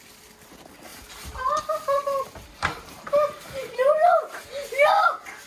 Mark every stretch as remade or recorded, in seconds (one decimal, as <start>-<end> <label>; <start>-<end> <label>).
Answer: 0.0-0.9 recorded; 0.9-1.6 remade; 1.6-2.0 recorded; 2.0-4.5 remade; 4.5-5.5 recorded